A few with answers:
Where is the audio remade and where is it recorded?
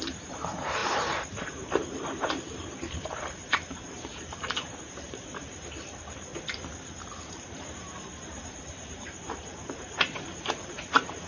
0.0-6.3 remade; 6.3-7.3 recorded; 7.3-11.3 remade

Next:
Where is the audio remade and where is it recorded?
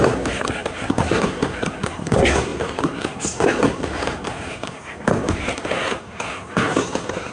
0.0-7.3 remade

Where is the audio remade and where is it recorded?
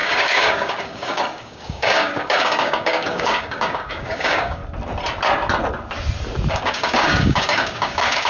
0.0-4.6 remade; 4.6-6.5 recorded; 6.5-8.3 remade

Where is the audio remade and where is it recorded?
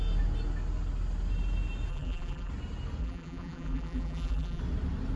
0.0-1.9 recorded; 1.9-2.5 remade; 2.5-3.0 recorded; 3.0-4.6 remade; 4.6-5.2 recorded